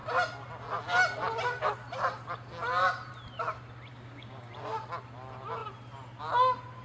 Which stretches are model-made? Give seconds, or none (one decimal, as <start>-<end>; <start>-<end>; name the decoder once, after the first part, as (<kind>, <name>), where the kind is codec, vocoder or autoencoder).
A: 3.9-4.5 (codec, DAC)